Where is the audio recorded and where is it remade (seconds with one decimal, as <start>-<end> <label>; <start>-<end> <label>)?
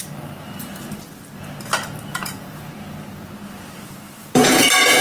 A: 0.0-2.1 recorded; 2.1-2.7 remade; 2.7-4.2 recorded; 4.2-5.0 remade